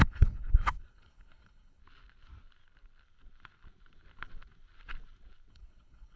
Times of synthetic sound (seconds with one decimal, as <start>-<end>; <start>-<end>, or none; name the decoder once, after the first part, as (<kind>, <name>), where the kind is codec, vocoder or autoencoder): 0.0-1.8 (codec, HILCodec); 5.5-6.2